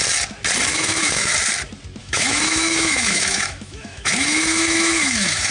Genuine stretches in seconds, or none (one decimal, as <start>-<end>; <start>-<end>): 0.0-0.7; 1.3-2.0